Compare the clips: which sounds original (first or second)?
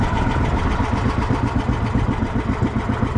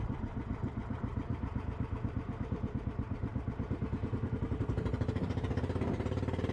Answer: first